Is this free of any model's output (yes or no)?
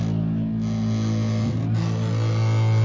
yes